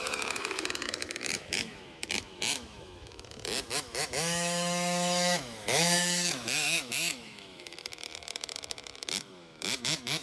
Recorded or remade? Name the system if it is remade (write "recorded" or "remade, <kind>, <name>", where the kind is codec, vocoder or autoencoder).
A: remade, autoencoder, DAC-VAE